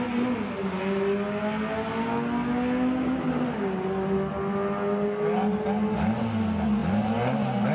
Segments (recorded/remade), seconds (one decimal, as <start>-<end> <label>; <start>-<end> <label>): 0.0-7.7 recorded